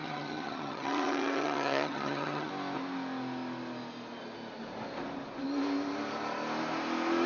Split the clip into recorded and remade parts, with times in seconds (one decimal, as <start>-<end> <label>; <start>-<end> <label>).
0.0-2.5 remade; 2.5-7.3 recorded